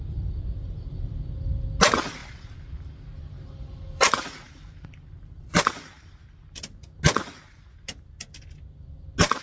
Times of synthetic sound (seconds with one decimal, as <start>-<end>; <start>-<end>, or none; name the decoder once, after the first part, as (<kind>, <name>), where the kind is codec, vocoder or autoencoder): 0.6-1.2 (vocoder, BigVGAN v2); 2.2-5.7